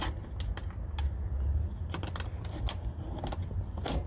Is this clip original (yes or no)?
yes